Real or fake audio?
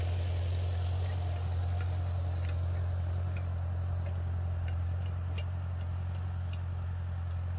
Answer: real